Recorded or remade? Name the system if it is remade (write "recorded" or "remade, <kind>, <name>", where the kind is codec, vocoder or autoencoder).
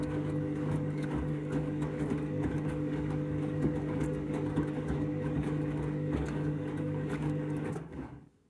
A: remade, codec, DAC